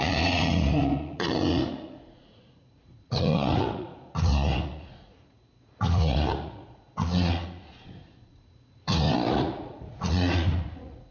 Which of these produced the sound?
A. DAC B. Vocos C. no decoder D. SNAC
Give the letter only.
B